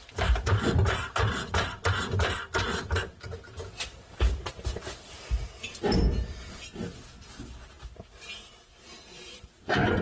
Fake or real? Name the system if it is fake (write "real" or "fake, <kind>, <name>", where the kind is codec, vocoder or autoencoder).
real